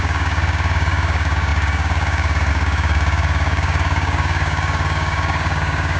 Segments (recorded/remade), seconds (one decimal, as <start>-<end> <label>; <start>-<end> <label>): 0.0-6.0 remade